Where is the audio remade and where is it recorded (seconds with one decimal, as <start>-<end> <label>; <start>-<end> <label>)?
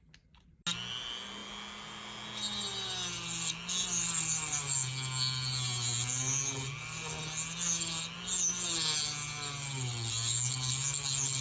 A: 0.0-11.4 recorded